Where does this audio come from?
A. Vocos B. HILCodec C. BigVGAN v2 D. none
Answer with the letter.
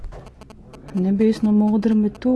D